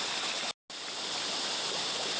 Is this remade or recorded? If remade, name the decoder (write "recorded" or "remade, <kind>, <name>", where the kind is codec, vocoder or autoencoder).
recorded